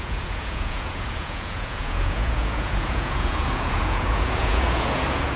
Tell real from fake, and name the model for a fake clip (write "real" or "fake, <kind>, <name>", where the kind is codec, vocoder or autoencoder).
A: fake, vocoder, Vocos